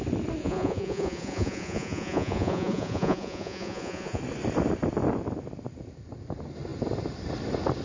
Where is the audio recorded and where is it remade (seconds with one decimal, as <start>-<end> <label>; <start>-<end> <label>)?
0.0-0.4 recorded; 0.4-4.2 remade; 4.2-7.8 recorded